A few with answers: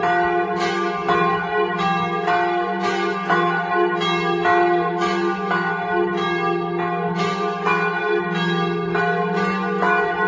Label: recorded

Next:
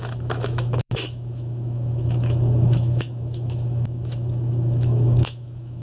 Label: remade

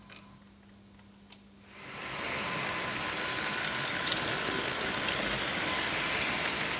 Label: recorded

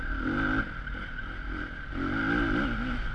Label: recorded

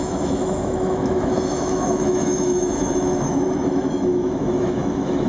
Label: remade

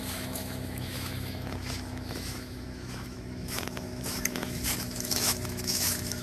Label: remade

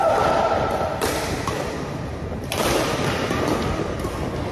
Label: recorded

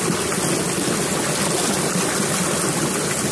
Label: recorded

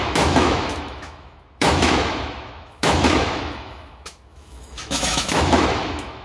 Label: remade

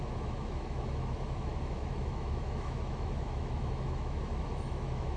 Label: remade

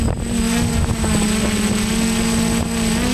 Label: recorded